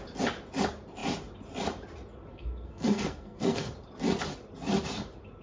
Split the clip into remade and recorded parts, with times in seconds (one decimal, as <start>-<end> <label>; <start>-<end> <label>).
0.0-2.3 recorded; 2.3-3.7 remade; 3.7-5.4 recorded